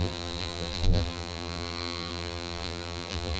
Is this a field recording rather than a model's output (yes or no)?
no